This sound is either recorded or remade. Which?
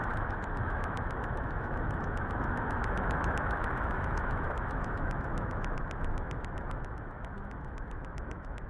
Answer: remade